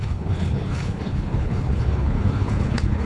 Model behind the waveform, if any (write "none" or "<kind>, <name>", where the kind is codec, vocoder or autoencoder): codec, HILCodec